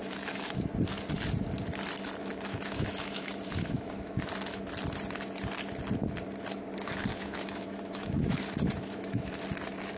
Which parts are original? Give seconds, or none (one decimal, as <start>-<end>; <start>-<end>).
0.0-2.2; 4.2-7.1; 9.3-10.0